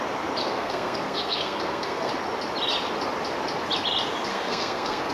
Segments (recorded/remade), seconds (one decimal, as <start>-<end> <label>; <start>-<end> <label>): 0.0-0.4 recorded; 0.4-2.1 remade; 2.1-4.3 recorded; 4.3-5.1 remade